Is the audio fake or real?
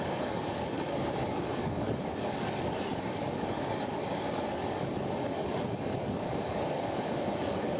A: fake